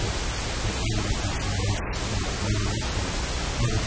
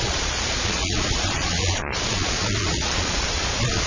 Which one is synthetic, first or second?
second